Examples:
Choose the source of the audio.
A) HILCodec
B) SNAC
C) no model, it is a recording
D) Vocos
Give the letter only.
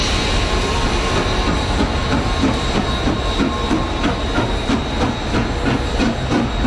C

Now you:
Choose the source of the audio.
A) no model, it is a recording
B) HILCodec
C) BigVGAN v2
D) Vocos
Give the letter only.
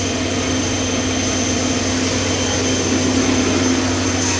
A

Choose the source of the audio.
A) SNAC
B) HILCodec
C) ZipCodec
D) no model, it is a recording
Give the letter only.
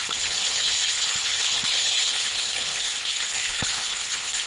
B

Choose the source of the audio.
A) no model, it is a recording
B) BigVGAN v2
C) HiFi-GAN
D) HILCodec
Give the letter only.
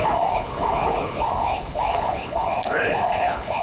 D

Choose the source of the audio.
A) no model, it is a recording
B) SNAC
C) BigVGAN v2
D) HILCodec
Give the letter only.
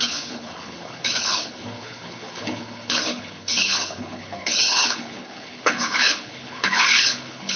D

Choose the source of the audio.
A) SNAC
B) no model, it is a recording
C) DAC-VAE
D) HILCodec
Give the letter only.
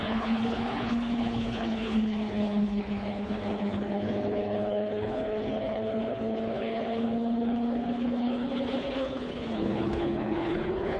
D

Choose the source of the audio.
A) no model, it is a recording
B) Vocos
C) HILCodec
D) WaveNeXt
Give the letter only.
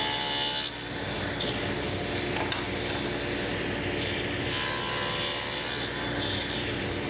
A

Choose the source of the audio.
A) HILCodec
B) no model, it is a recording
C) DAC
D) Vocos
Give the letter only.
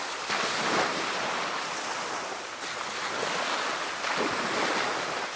B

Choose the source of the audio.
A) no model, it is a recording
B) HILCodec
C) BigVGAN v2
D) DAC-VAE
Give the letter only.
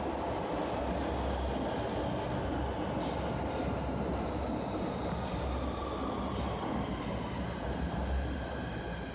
A